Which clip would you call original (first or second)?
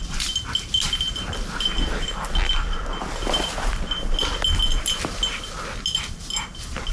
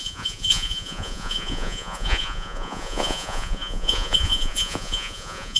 first